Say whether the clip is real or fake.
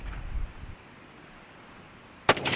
real